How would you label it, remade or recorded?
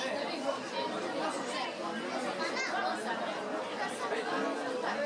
recorded